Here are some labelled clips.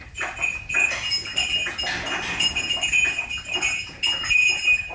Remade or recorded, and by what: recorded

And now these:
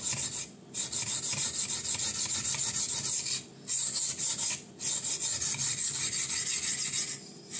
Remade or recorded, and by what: recorded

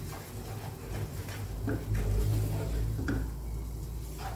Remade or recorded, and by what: recorded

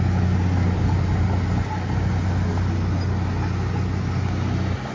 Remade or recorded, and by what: recorded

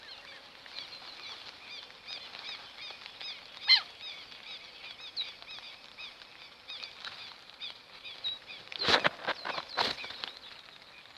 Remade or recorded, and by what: recorded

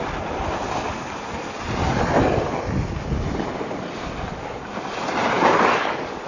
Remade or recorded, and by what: recorded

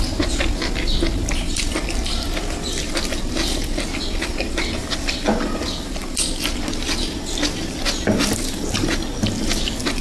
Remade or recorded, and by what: recorded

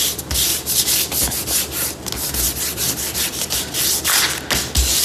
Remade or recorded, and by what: recorded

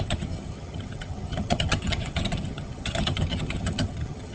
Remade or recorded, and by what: remade, vocoder, HiFi-GAN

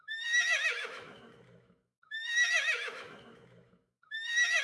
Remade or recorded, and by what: remade, autoencoder, DAC-VAE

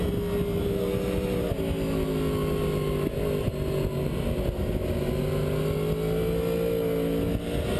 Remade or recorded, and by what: recorded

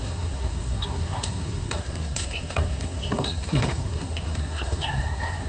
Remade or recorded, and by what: remade, codec, SNAC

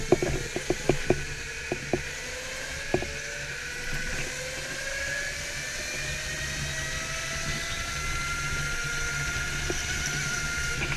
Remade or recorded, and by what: recorded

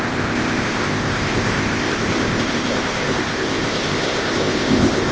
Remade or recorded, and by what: remade, codec, ZipCodec